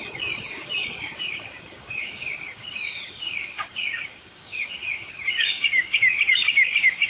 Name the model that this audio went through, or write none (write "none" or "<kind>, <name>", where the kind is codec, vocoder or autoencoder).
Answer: codec, DAC